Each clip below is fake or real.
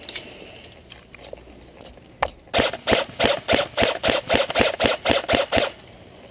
real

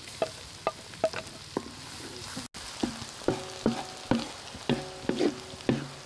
real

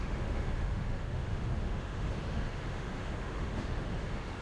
fake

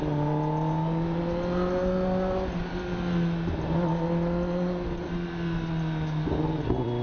real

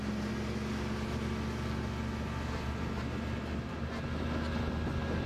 real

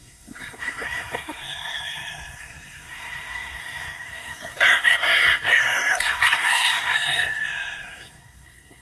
fake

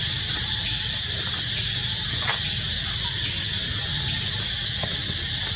real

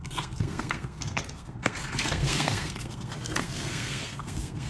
fake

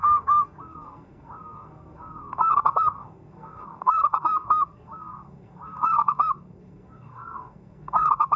fake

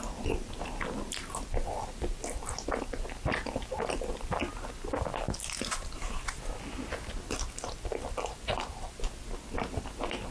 real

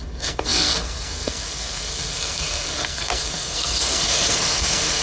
fake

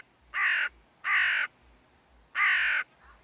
real